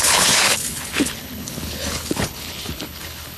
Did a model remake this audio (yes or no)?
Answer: yes